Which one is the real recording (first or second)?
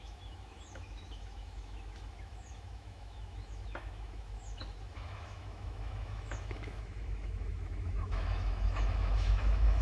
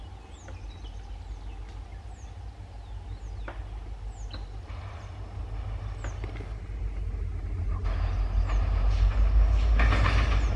second